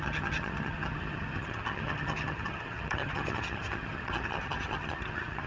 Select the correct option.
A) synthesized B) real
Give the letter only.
A